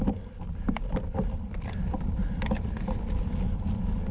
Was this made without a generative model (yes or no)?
yes